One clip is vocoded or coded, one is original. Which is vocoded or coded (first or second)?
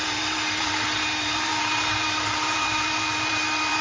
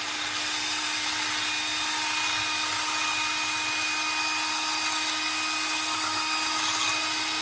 first